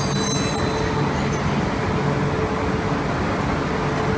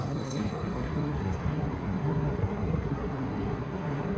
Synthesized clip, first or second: second